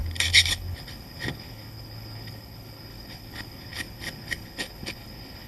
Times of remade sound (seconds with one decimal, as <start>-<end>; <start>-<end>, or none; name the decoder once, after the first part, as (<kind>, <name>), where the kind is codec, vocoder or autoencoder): 0.0-5.5 (codec, HILCodec)